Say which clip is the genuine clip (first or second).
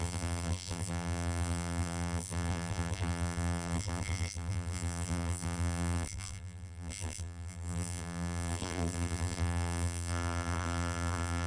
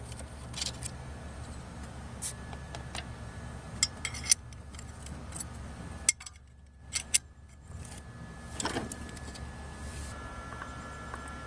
second